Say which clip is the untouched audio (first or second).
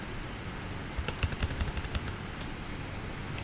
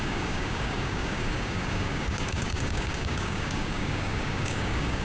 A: first